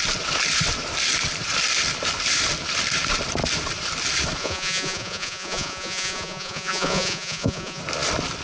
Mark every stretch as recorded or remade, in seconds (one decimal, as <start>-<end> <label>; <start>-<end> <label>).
0.0-4.4 recorded; 4.4-7.8 remade; 7.8-8.4 recorded